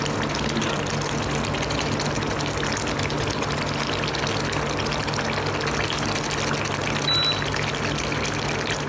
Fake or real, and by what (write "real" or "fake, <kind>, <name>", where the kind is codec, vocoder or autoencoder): real